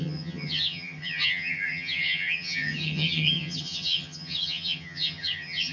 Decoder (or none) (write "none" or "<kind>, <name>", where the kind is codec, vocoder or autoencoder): vocoder, HiFi-GAN